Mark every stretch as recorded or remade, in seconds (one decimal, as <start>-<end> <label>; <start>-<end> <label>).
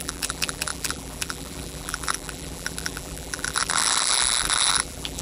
0.0-5.2 remade